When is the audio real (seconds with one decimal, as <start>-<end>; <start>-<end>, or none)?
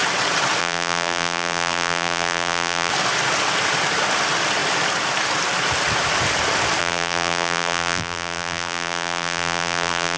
0.0-0.6; 2.9-6.8